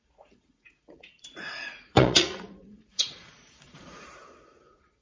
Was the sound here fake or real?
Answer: fake